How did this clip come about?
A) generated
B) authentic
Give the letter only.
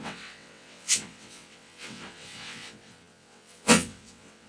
A